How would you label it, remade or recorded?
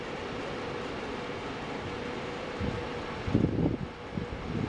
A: recorded